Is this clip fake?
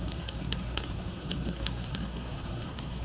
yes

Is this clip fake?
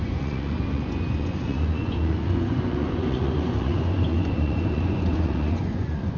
yes